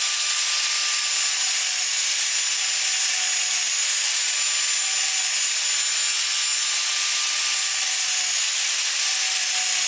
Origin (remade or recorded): recorded